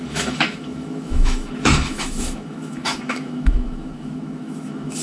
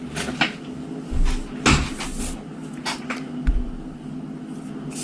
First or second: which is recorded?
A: second